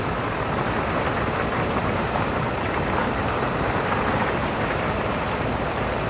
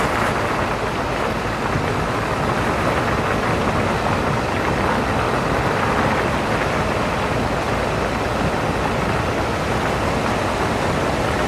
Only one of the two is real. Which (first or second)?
second